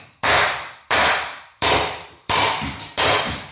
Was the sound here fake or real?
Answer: fake